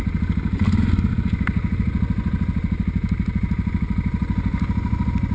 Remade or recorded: recorded